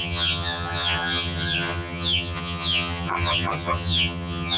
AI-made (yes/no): yes